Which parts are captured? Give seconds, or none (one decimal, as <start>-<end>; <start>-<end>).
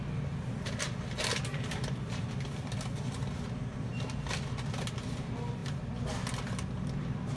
0.0-1.5; 3.9-7.4